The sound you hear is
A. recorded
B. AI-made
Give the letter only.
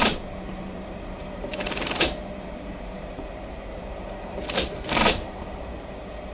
B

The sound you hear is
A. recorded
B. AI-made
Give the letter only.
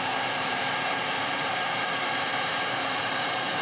B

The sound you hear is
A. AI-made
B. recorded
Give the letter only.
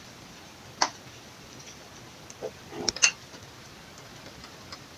B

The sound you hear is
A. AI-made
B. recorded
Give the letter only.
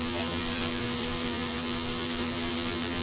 A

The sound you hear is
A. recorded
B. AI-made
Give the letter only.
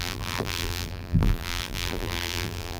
B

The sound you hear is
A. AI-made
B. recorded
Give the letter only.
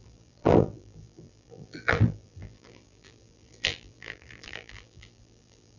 A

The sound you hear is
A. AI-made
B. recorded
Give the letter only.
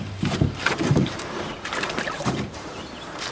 A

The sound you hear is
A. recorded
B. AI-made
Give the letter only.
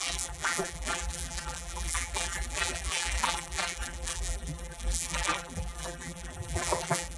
B